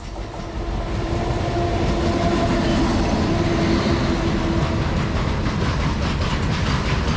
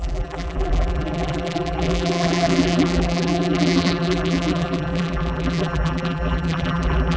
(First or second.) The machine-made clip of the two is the second